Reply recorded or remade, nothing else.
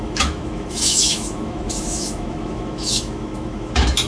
remade